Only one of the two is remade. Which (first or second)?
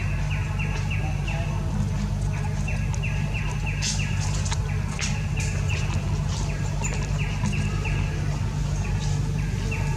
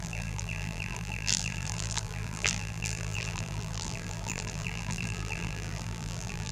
second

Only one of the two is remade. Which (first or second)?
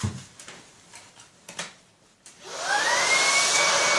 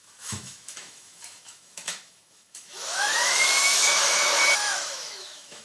second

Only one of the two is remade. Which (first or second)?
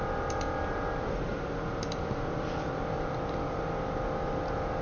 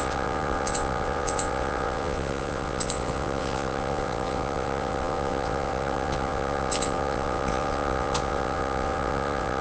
second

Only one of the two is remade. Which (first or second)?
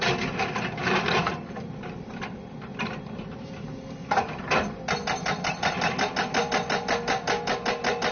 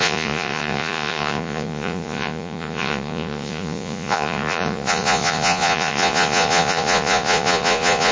second